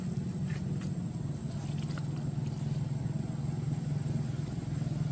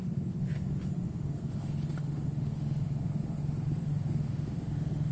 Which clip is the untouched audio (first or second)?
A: first